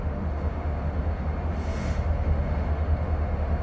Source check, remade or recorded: remade